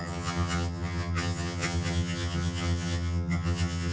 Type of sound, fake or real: fake